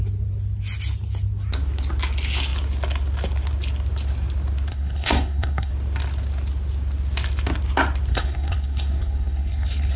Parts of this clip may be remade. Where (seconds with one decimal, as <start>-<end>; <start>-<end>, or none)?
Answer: 4.7-5.7; 8.1-10.0